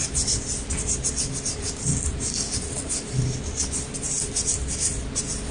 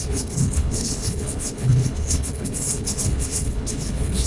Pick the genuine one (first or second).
first